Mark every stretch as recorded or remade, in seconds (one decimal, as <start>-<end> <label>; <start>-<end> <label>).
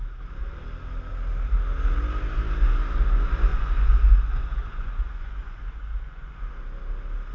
0.0-3.5 recorded; 3.5-6.4 remade; 6.4-7.3 recorded